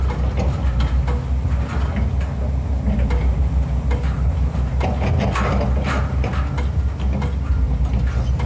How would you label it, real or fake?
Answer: real